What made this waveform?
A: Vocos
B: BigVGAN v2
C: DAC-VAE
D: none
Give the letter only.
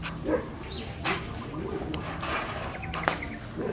D